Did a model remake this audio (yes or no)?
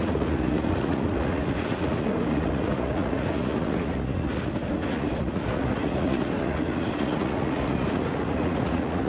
yes